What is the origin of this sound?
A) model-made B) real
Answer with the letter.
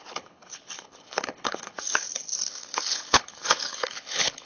A